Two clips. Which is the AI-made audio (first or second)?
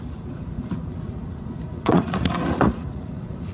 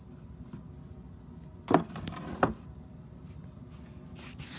first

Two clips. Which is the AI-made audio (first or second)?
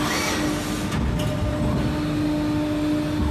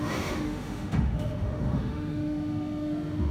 second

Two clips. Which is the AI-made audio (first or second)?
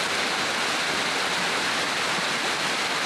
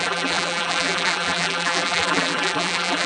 second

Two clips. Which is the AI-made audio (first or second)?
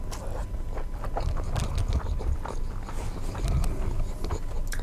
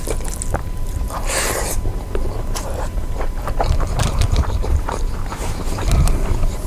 second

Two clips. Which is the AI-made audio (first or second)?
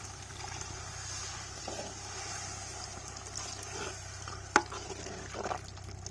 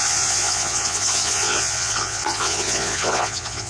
second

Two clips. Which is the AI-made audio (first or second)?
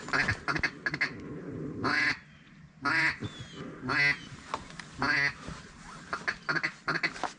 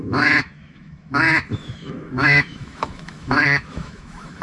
second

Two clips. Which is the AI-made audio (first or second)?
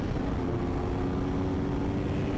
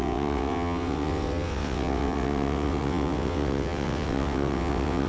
second